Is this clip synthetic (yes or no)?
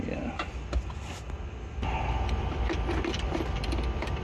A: no